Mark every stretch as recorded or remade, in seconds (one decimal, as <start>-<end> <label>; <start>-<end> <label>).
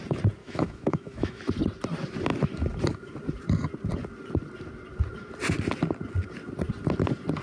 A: 0.0-0.4 recorded; 0.4-1.4 remade; 1.4-7.4 recorded